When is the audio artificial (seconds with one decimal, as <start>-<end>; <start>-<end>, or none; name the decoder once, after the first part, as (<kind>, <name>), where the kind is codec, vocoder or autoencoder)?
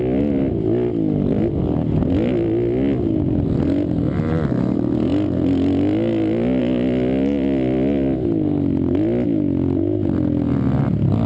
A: none